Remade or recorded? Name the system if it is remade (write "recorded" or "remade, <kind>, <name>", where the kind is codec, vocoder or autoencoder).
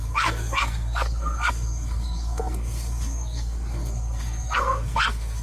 remade, codec, SNAC